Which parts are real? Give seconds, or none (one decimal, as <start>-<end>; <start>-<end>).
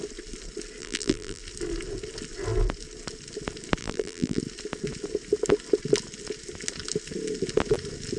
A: 0.0-0.8; 1.4-3.8; 4.4-8.2